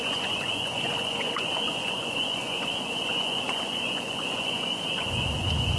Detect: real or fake fake